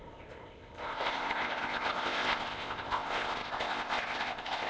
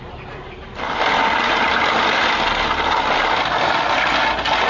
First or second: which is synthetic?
first